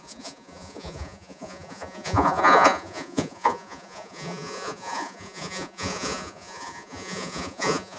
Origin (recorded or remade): remade